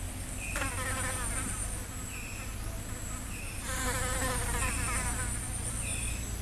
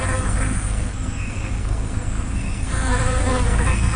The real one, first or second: first